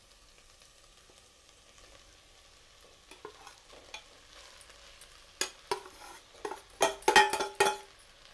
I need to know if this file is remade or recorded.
recorded